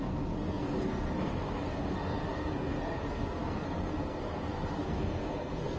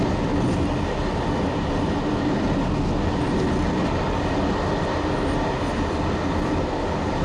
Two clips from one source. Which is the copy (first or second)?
first